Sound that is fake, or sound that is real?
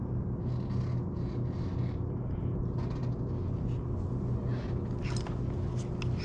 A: real